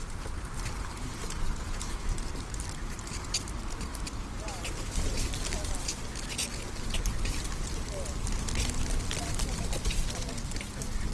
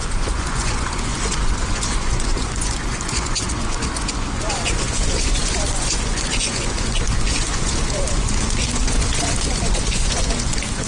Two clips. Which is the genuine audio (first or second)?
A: first